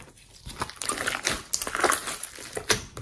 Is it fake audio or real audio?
real